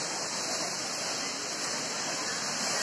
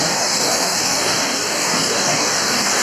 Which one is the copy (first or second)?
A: second